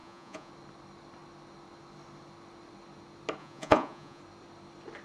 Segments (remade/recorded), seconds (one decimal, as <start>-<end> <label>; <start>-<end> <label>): 0.0-0.5 remade; 0.5-3.4 recorded; 3.4-4.2 remade; 4.2-5.0 recorded